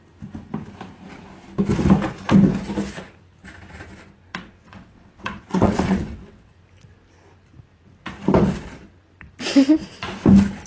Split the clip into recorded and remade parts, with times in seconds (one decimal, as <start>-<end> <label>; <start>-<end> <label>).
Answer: 0.0-4.3 recorded; 4.3-6.5 remade; 6.5-10.7 recorded